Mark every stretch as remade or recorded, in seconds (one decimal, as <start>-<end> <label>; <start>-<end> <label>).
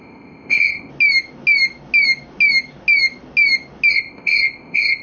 0.0-0.9 remade; 0.9-3.9 recorded; 3.9-5.0 remade